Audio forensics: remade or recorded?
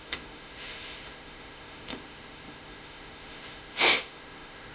remade